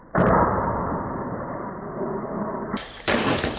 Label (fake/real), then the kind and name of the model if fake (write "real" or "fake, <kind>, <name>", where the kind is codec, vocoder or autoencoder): fake, vocoder, BigVGAN v2